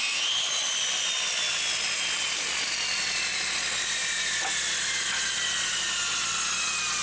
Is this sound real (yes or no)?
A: yes